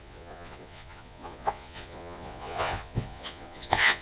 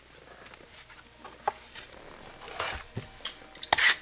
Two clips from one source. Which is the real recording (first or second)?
second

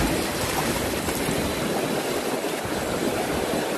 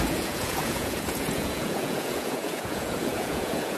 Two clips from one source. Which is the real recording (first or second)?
first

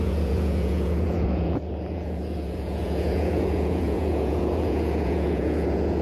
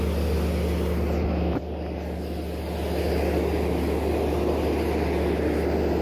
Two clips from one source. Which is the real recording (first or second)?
second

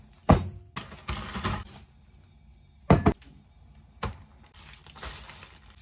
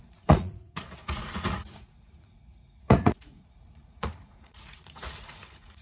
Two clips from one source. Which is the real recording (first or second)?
first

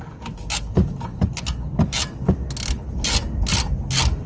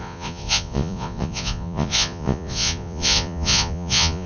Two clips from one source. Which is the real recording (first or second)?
first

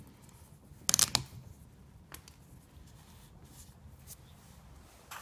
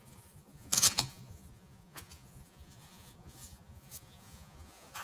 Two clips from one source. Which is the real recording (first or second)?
first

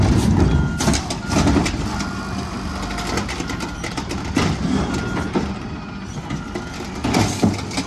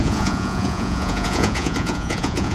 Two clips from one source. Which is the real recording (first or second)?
first